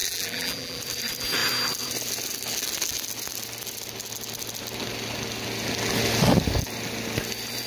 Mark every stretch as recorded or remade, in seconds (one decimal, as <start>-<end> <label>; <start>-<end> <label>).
0.0-0.8 remade; 0.8-7.7 recorded